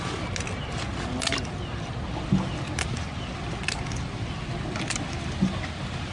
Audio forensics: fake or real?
real